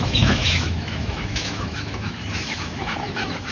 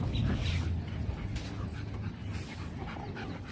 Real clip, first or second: second